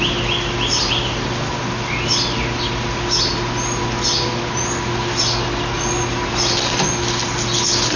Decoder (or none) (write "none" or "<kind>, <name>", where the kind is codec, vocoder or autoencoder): none